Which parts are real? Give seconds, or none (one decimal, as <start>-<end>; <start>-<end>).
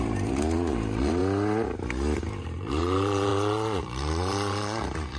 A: 1.2-2.4